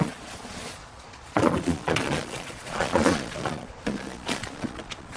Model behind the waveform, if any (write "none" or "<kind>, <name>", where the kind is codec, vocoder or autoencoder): vocoder, Vocos